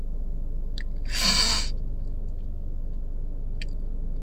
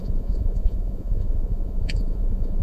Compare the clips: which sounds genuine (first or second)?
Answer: first